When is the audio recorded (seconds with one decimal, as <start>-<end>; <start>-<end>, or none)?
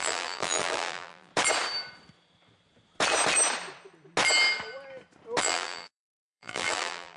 1.3-5.4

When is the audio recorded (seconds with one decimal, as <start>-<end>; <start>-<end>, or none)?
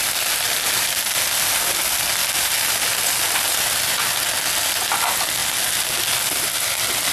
0.0-7.1